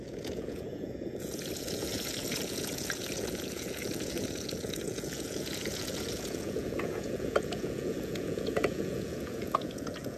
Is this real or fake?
fake